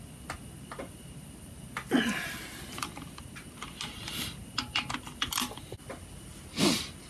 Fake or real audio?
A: real